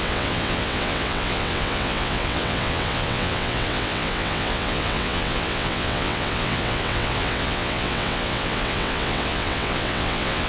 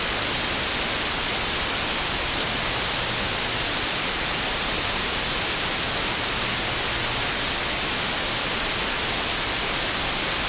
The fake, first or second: first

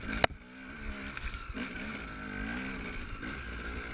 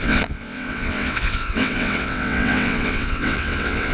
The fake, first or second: second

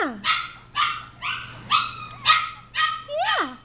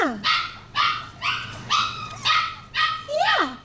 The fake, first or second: second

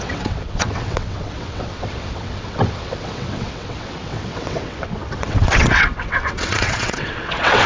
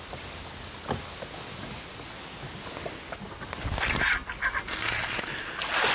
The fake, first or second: first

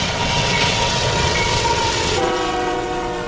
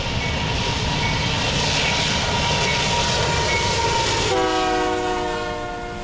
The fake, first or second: first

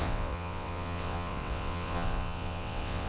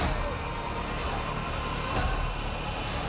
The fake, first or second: first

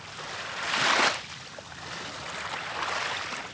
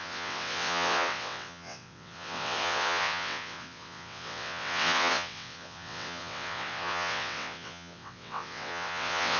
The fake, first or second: second